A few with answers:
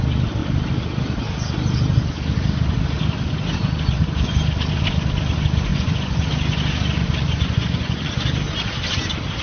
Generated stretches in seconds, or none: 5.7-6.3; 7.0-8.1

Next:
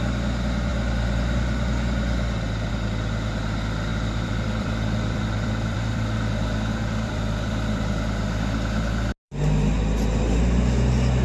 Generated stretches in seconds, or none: 3.9-7.9